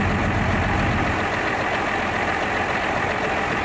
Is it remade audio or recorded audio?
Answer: recorded